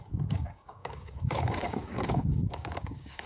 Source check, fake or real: fake